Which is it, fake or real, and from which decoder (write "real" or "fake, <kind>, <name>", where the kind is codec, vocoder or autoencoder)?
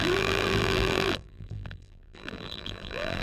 fake, vocoder, BigVGAN v2